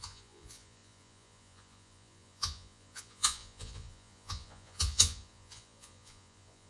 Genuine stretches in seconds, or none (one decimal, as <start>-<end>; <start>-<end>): none